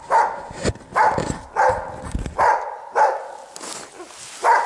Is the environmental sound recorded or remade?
recorded